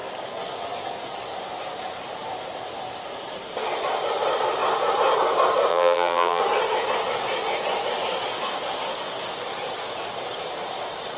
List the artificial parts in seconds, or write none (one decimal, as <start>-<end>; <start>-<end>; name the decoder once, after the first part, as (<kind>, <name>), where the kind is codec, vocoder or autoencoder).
5.7-6.4 (vocoder, BigVGAN v2)